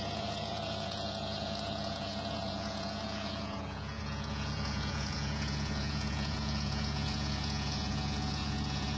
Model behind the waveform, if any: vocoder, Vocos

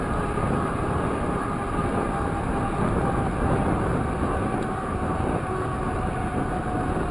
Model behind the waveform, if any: none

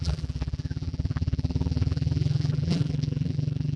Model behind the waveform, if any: vocoder, BigVGAN v2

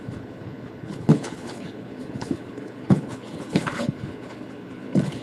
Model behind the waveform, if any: codec, HILCodec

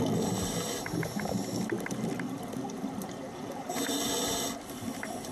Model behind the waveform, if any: none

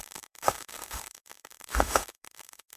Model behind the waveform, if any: autoencoder, DAC-VAE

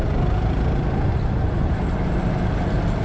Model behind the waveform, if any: none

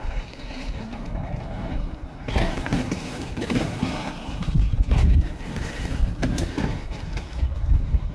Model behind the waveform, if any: codec, SNAC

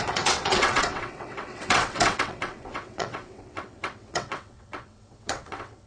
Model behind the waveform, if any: vocoder, WaveNeXt